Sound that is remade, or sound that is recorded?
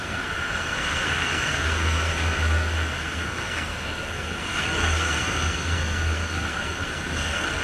remade